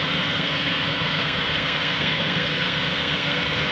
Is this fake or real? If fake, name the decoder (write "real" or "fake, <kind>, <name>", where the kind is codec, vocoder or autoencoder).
fake, codec, SNAC